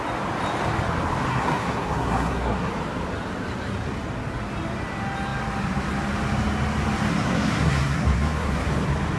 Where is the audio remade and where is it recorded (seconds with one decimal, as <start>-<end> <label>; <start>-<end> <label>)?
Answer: 0.0-1.3 recorded; 1.3-2.7 remade; 2.7-7.1 recorded; 7.1-8.7 remade; 8.7-9.2 recorded